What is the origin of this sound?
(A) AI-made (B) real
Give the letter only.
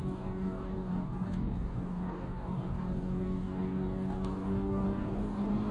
A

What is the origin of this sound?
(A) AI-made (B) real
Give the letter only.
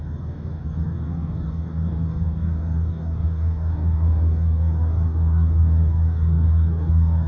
A